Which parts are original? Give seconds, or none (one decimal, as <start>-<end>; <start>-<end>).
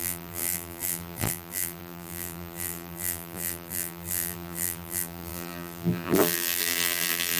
none